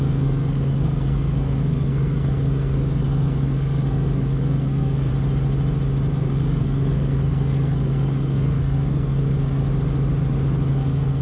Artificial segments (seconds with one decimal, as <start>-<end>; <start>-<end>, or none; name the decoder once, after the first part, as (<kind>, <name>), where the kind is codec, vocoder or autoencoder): 0.0-5.1 (codec, SNAC); 6.1-9.6; 10.7-11.2